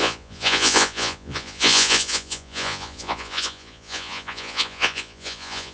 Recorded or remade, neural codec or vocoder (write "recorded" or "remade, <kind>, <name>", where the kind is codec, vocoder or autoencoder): remade, vocoder, Vocos